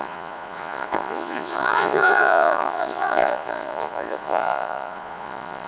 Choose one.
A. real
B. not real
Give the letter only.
B